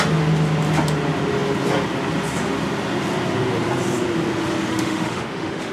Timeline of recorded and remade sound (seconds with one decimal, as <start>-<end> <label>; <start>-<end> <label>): 0.0-4.7 recorded; 4.7-5.7 remade